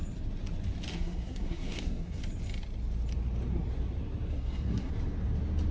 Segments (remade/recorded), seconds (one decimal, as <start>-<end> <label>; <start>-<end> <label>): 0.0-0.9 recorded; 0.9-2.2 remade; 2.2-4.3 recorded; 4.3-4.9 remade; 4.9-5.7 recorded